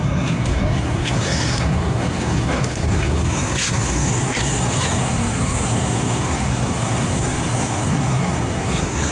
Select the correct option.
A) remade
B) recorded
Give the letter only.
A